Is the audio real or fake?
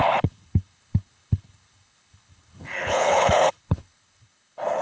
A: fake